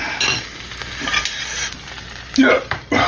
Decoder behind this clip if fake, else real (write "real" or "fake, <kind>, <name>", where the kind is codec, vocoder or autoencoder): fake, vocoder, BigVGAN v2